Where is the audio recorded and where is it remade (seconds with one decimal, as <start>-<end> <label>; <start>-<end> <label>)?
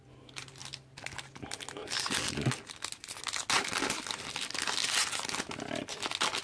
0.0-6.4 recorded